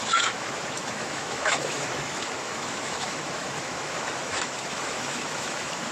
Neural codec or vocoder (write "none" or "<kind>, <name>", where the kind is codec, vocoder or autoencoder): autoencoder, DAC-VAE